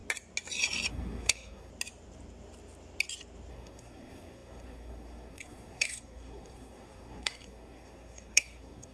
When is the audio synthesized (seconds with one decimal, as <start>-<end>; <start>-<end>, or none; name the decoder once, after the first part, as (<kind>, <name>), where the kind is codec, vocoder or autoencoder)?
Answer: 0.9-1.7 (codec, SNAC); 3.5-8.9